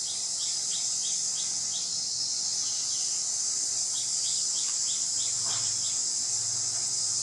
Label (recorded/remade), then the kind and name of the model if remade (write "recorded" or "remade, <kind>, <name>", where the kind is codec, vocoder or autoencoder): recorded